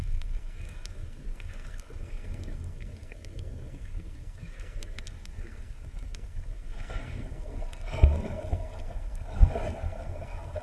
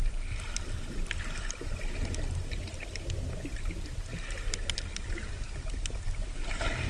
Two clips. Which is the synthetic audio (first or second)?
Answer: first